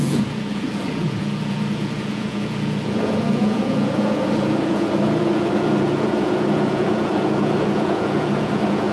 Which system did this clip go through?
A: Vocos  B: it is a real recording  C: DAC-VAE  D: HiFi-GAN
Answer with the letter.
A